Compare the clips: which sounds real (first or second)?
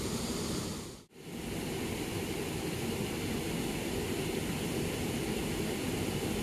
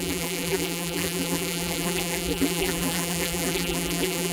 first